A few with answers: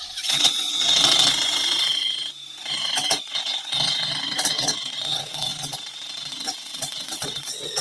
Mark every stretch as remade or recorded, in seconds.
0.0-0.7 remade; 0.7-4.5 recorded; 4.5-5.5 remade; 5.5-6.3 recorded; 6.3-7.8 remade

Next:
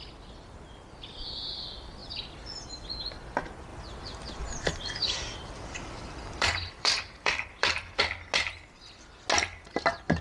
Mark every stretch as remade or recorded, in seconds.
0.0-2.0 recorded; 2.0-2.7 remade; 2.7-3.7 recorded; 3.7-8.0 remade; 8.0-10.2 recorded

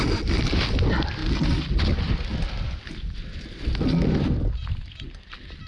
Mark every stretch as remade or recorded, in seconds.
0.0-5.7 recorded

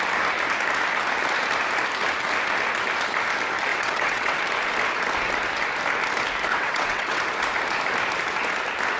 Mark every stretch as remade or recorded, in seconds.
0.0-3.7 recorded; 3.7-4.4 remade; 4.4-6.5 recorded; 6.5-7.2 remade; 7.2-9.0 recorded

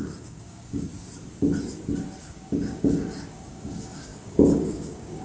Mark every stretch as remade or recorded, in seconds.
0.0-0.9 remade; 0.9-2.2 recorded; 2.2-5.2 remade

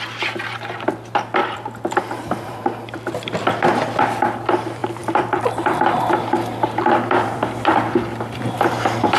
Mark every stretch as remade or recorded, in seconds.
0.0-1.4 recorded; 1.4-3.3 remade; 3.3-4.8 recorded; 4.8-9.2 remade